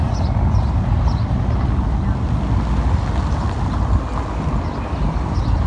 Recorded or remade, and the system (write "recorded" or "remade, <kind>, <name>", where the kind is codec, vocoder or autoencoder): recorded